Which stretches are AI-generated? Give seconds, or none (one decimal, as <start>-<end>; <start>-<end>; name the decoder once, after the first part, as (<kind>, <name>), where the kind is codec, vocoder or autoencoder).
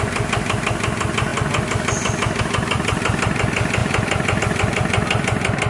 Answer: 3.8-4.4 (vocoder, BigVGAN v2)